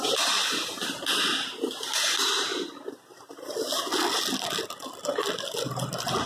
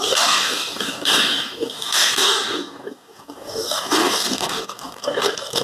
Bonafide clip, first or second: first